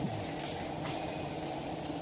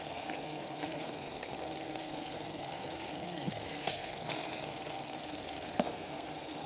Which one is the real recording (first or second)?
first